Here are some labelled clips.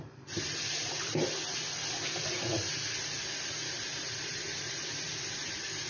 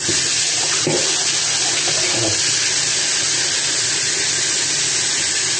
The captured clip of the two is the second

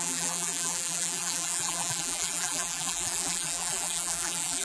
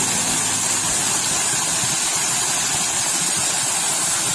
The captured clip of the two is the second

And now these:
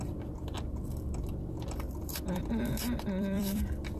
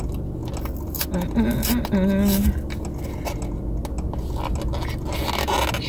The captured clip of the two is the second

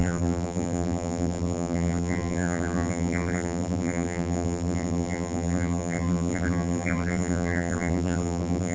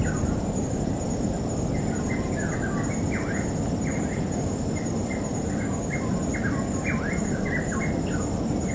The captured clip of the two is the second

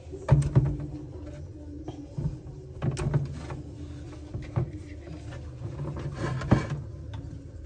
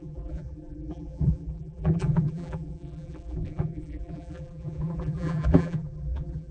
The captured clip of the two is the first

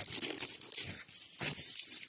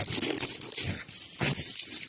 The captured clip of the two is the second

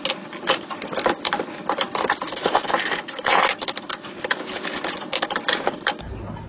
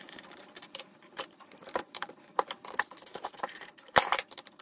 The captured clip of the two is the first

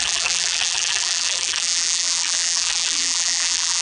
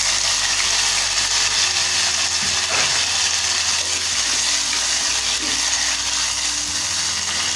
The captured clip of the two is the second